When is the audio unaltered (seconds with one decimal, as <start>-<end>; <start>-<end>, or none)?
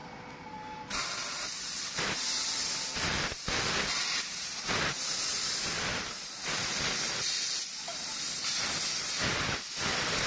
0.0-10.3